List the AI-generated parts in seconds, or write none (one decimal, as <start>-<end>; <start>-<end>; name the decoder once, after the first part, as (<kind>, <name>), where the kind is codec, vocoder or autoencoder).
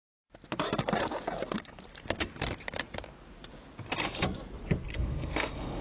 4.9-5.8 (codec, SNAC)